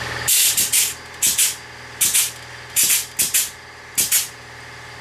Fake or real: real